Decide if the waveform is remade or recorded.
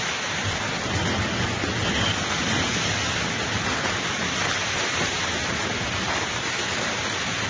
recorded